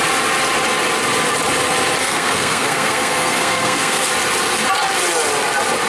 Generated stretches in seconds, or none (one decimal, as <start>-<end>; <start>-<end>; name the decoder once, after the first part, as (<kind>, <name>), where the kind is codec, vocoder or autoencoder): 2.0-4.1 (codec, SNAC)